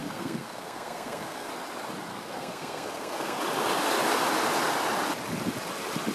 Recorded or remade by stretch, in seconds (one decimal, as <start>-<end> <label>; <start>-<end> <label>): 0.0-1.5 remade; 1.5-2.1 recorded; 2.1-3.4 remade; 3.4-6.1 recorded